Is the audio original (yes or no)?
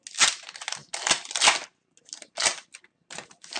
yes